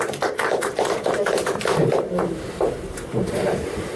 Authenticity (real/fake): fake